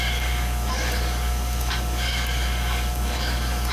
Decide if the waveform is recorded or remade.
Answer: remade